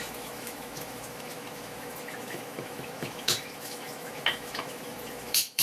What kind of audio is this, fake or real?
fake